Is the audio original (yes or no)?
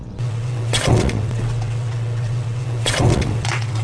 no